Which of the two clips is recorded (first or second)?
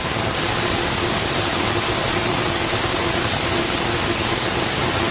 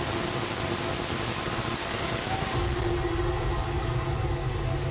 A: second